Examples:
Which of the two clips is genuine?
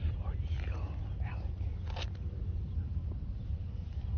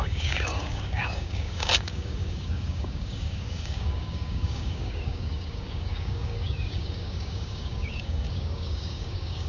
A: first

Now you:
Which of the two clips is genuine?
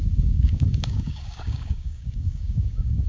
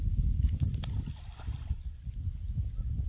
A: second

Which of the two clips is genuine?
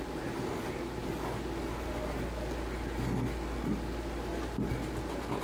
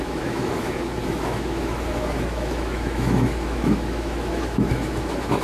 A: first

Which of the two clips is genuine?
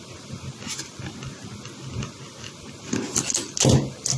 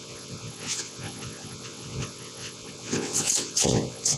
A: first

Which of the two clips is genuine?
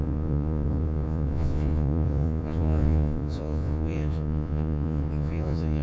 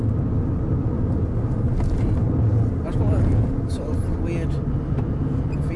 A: second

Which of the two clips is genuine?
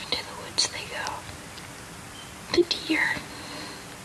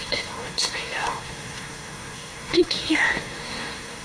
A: first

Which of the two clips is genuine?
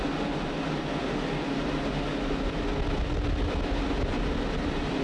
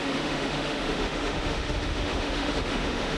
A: first